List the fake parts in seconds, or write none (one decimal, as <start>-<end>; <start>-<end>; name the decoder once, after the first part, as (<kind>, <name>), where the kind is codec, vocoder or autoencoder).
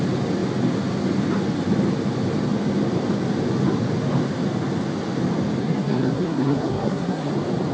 5.6-7.3 (codec, SNAC)